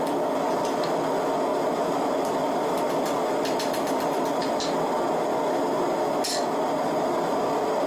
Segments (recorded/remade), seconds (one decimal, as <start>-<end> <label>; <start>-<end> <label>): 0.0-1.5 recorded; 1.5-2.8 remade; 2.8-7.9 recorded